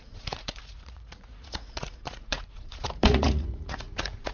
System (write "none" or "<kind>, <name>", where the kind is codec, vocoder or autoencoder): vocoder, Vocos